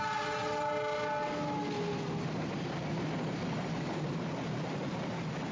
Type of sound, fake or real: real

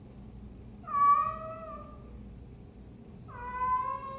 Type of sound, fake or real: real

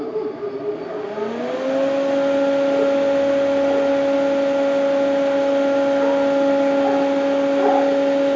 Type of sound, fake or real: real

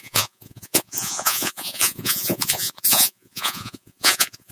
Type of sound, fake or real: fake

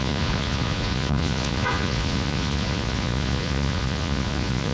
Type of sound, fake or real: fake